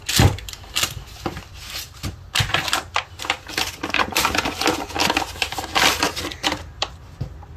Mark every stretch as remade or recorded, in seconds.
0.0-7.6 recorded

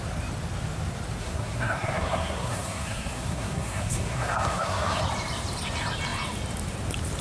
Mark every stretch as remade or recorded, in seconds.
0.0-1.2 recorded; 1.2-5.0 remade; 5.0-7.2 recorded

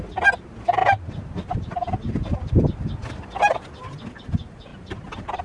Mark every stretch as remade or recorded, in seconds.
0.0-5.4 recorded

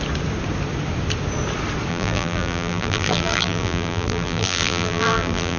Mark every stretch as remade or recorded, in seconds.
0.0-1.9 recorded; 1.9-5.6 remade